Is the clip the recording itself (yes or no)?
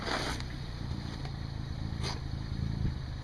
yes